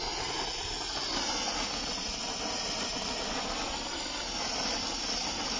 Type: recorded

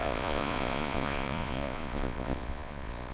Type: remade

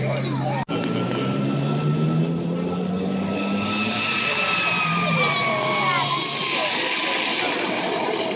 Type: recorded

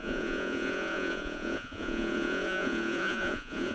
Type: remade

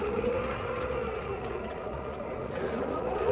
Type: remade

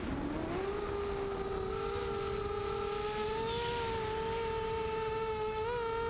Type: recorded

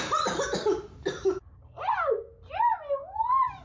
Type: recorded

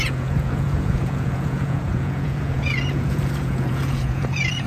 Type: remade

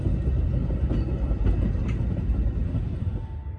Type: recorded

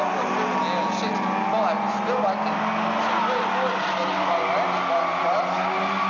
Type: recorded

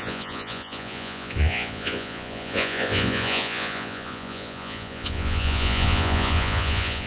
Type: remade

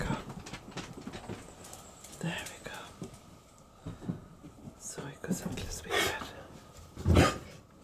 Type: recorded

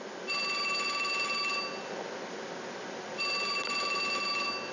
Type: recorded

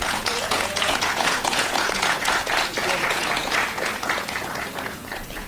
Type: remade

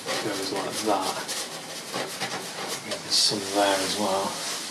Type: recorded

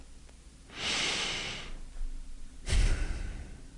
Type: recorded